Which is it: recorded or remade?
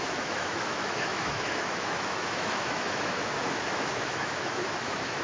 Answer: remade